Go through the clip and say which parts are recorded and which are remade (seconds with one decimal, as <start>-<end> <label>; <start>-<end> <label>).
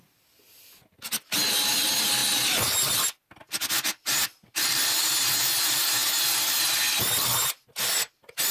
0.0-8.5 recorded